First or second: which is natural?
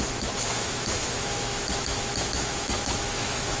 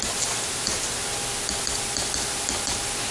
second